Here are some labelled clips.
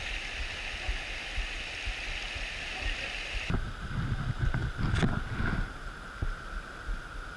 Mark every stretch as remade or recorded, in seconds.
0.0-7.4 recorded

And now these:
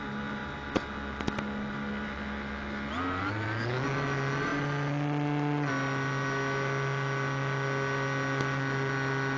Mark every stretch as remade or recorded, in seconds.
0.0-9.4 recorded

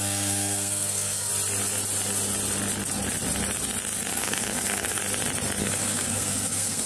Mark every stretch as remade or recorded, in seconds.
0.0-1.3 remade; 1.3-4.1 recorded; 4.1-5.0 remade; 5.0-5.6 recorded; 5.6-6.9 remade